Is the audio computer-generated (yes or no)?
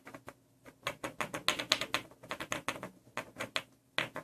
no